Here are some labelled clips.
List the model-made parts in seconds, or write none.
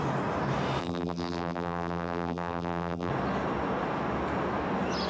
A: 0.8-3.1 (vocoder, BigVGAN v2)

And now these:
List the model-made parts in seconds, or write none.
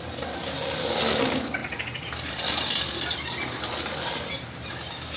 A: none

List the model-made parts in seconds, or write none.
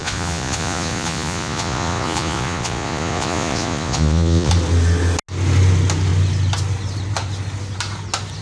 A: 0.0-4.5 (vocoder, Vocos)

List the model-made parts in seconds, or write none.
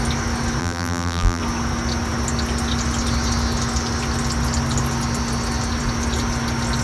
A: 0.6-1.4 (vocoder, BigVGAN v2)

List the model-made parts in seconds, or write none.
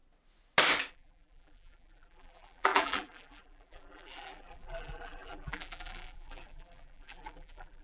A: 0.9-7.8 (vocoder, BigVGAN v2)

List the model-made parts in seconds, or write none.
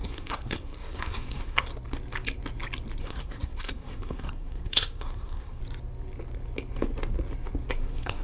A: 0.0-1.7 (codec, SNAC); 3.0-5.6; 7.7-8.2